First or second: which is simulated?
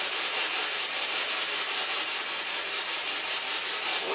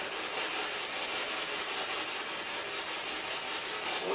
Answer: first